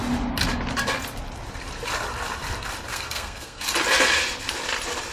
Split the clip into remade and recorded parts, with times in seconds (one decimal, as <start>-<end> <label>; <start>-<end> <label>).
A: 0.0-2.9 recorded; 2.9-3.6 remade; 3.6-5.1 recorded